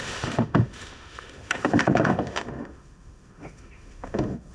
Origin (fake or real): fake